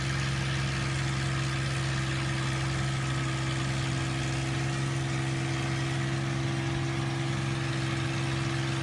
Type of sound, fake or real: real